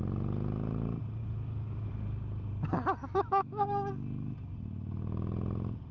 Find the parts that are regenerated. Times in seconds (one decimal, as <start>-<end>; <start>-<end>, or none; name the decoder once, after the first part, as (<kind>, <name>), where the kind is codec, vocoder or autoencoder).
1.2-1.9 (autoencoder, DAC-VAE); 3.0-3.9

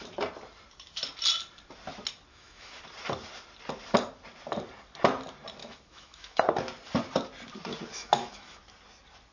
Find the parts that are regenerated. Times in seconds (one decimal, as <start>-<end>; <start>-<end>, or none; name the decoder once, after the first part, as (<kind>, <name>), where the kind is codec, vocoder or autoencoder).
2.3-2.8 (autoencoder, DAC-VAE); 5.6-6.4; 7.9-8.6

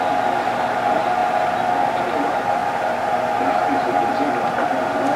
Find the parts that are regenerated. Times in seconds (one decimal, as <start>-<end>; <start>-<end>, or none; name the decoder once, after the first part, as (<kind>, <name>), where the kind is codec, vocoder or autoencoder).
none

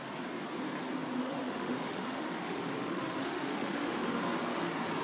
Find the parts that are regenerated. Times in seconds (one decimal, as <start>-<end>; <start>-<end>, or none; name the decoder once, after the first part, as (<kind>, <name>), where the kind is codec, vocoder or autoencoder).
1.2-4.2 (autoencoder, DAC-VAE)

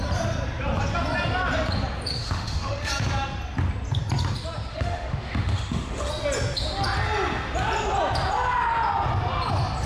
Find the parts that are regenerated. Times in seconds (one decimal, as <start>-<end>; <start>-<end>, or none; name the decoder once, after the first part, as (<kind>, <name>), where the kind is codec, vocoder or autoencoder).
2.2-2.9 (autoencoder, DAC-VAE); 4.7-6.1

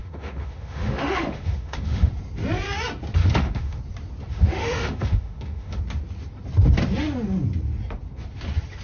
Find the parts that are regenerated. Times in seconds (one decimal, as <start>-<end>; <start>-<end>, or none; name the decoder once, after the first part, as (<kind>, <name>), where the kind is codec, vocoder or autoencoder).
0.0-2.1 (autoencoder, DAC-VAE); 3.2-3.8; 4.3-5.8

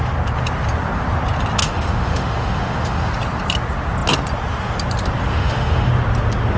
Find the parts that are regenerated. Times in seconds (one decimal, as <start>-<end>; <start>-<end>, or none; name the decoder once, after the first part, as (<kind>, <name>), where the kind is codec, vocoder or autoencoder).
1.6-3.1 (autoencoder, DAC-VAE); 5.3-5.9